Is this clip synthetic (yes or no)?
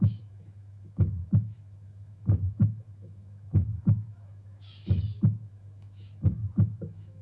yes